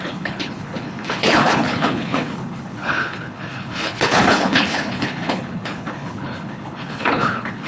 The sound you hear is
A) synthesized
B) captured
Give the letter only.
A